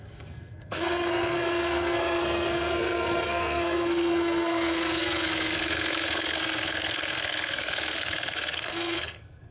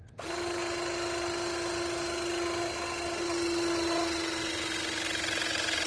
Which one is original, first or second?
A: second